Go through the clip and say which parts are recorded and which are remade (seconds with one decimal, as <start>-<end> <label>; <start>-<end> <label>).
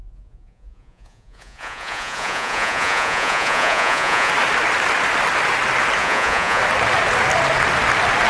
0.0-4.3 remade; 4.3-6.0 recorded; 6.0-6.6 remade; 6.6-8.3 recorded